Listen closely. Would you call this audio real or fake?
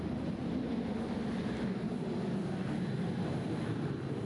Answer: real